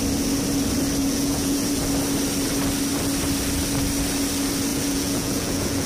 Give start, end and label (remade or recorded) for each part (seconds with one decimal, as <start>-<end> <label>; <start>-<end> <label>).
0.0-1.0 recorded; 1.0-1.8 remade; 1.8-4.7 recorded; 4.7-5.9 remade